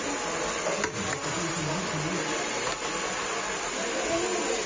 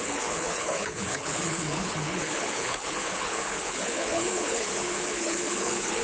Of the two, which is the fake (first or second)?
second